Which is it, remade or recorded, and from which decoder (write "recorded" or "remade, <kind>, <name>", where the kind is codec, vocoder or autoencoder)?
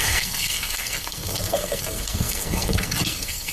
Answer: remade, codec, SNAC